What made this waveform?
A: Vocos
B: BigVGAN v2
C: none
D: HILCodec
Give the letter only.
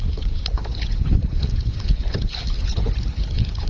D